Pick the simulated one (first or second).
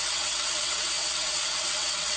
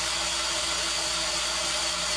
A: first